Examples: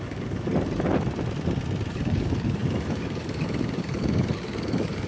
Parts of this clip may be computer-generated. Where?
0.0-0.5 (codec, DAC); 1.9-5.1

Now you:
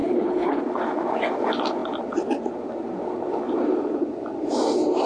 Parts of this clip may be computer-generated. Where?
0.0-0.6 (codec, HILCodec)

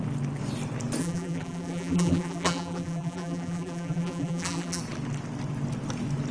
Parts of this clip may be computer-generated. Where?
1.0-4.8 (vocoder, BigVGAN v2)

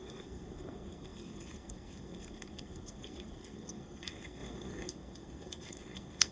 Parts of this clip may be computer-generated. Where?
0.0-6.3 (codec, SNAC)